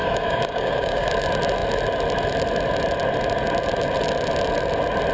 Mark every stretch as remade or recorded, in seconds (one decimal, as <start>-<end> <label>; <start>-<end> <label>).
0.0-1.1 remade; 1.1-5.1 recorded